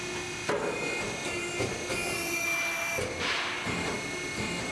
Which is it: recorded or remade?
recorded